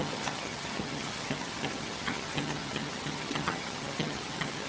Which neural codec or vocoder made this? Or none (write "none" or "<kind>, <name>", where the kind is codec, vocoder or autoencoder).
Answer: vocoder, HiFi-GAN